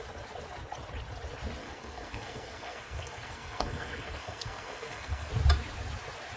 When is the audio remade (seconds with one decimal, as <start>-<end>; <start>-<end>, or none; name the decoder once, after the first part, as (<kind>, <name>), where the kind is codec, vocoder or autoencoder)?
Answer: 1.6-5.3 (codec, SNAC)

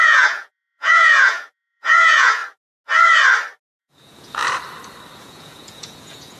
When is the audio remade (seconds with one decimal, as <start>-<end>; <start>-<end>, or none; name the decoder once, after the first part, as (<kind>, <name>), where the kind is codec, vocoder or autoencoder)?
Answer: 0.0-2.4 (vocoder, Vocos); 3.8-4.4; 5.2-6.4

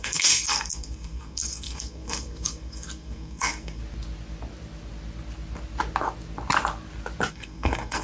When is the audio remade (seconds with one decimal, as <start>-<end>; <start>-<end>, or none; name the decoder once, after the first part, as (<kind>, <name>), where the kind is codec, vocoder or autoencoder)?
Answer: 0.0-3.8 (codec, SNAC); 7.3-8.0